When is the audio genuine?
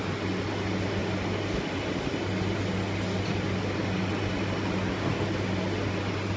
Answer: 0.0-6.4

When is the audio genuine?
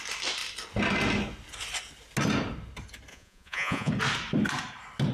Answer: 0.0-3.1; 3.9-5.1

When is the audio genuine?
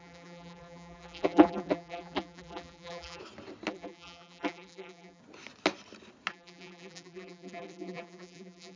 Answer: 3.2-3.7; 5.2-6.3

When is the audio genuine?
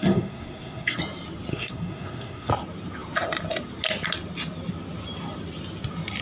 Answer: 1.0-1.5; 2.5-6.2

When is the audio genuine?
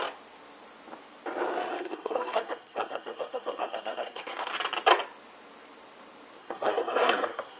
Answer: 0.0-1.7; 4.5-6.4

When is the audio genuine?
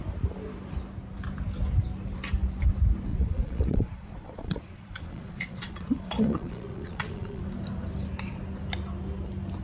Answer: 0.0-3.1; 7.4-9.6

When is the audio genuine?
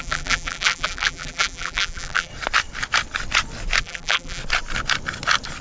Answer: 2.3-3.8; 4.4-5.6